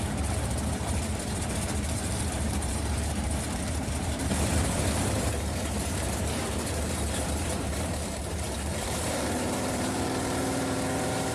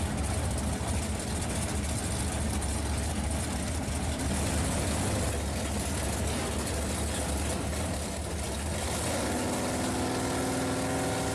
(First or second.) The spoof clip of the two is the first